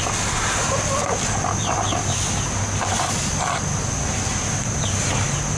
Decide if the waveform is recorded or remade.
recorded